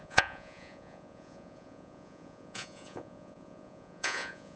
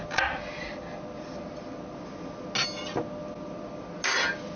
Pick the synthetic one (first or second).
first